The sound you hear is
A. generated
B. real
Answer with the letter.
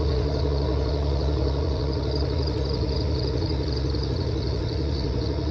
A